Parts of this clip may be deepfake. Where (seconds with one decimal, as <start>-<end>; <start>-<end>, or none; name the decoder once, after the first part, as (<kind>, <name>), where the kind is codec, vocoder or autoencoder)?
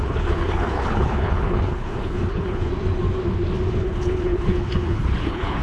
0.0-2.7 (codec, HILCodec); 3.7-5.6